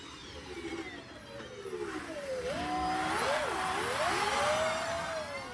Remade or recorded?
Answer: recorded